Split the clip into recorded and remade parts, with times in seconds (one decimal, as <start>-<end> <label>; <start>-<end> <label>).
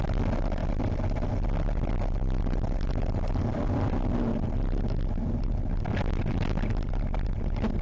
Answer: 0.0-7.8 recorded